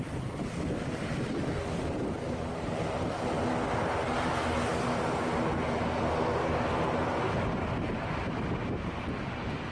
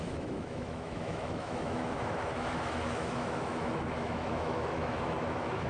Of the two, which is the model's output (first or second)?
second